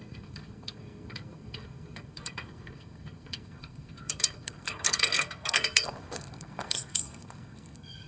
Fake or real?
fake